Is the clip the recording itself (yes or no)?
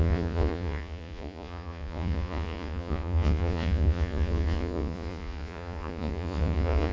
no